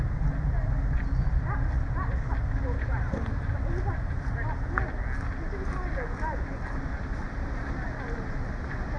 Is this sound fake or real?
real